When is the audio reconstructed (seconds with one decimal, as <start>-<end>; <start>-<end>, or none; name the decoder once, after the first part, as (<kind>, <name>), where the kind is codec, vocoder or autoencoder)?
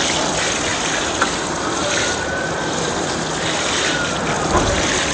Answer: none